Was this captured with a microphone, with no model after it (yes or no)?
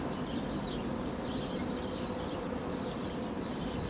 yes